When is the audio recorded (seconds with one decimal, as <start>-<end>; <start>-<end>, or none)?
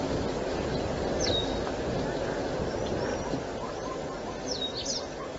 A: 0.0-5.4